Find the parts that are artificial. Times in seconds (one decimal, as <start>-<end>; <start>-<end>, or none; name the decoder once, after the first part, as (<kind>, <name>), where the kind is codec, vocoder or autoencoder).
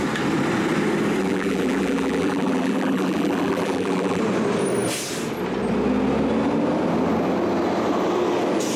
1.2-4.2 (vocoder, BigVGAN v2)